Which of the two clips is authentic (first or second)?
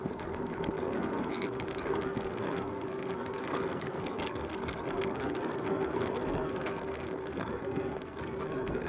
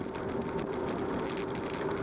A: second